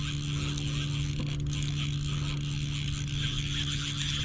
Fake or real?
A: real